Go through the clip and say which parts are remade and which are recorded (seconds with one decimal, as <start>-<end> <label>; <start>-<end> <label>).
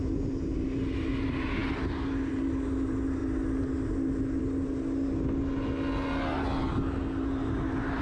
0.0-8.0 recorded